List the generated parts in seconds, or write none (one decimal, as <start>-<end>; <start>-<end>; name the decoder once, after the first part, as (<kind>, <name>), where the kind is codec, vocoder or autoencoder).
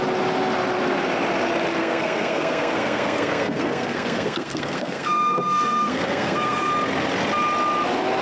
1.8-6.7 (codec, SNAC)